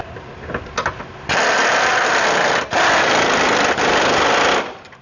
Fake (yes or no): no